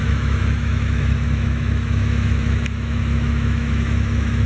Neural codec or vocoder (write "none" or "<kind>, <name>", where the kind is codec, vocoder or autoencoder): autoencoder, DAC-VAE